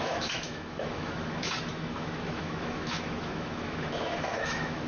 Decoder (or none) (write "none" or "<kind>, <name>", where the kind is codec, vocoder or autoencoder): autoencoder, DAC-VAE